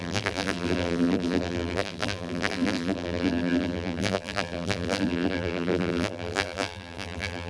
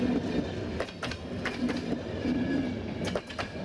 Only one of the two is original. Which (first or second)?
second